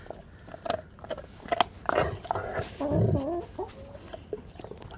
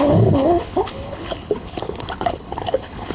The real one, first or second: first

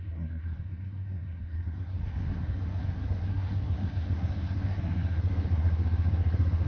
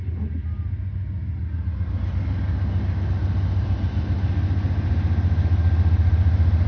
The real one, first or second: second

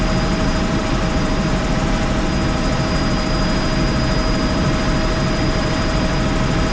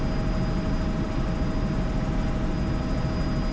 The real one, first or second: second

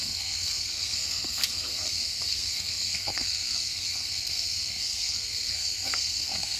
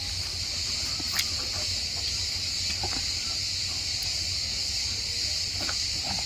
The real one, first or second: second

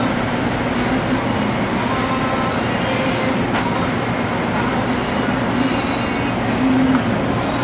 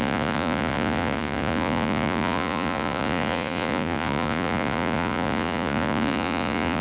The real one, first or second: first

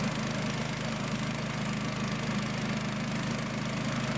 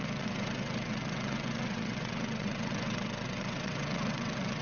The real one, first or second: first